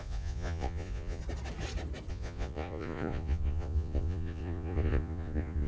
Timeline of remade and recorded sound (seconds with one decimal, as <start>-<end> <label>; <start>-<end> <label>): 0.0-1.2 remade; 1.2-2.1 recorded; 2.1-5.7 remade